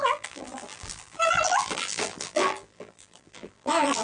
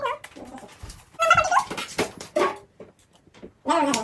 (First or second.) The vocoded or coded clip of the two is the first